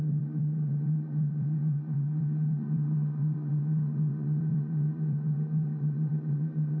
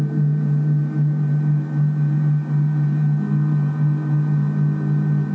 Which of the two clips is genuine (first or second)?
second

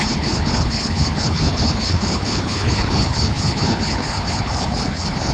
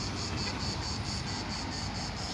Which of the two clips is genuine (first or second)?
second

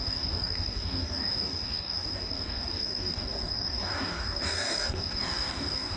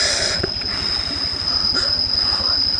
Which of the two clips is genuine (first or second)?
second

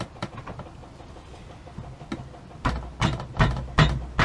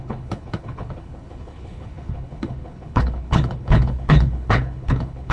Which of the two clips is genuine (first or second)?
first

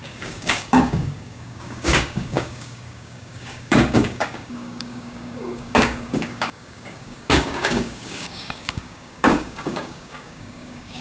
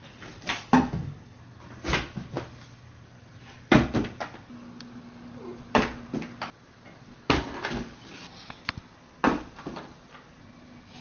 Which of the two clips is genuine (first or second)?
second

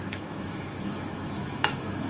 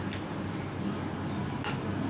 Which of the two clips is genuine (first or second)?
second